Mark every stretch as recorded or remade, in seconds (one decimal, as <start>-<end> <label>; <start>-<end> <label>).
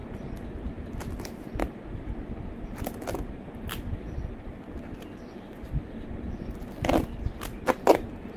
0.0-8.4 recorded